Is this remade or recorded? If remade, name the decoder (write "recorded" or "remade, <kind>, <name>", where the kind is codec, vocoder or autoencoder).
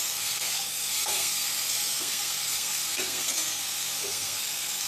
remade, codec, SNAC